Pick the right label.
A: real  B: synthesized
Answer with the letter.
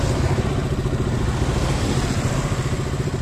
A